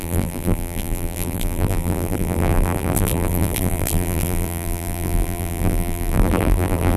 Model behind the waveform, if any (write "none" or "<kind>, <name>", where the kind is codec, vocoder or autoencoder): vocoder, BigVGAN v2